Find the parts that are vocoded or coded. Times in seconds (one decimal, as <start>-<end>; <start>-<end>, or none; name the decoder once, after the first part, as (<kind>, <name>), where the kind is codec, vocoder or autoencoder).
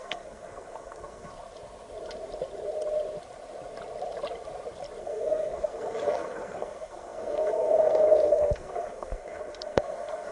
0.0-1.3 (codec, SNAC); 5.0-10.3